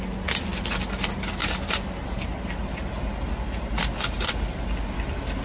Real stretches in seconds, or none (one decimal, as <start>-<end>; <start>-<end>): 0.0-5.4